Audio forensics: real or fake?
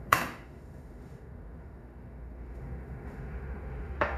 fake